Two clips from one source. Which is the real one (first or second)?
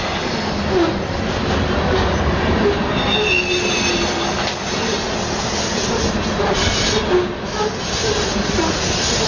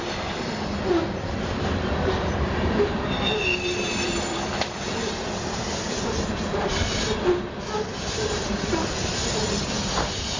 first